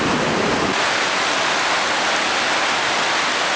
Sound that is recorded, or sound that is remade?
recorded